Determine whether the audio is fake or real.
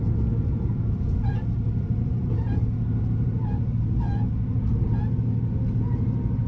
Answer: real